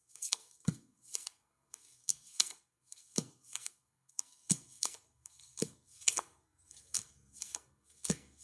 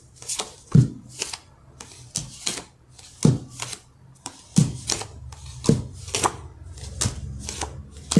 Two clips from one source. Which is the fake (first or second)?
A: first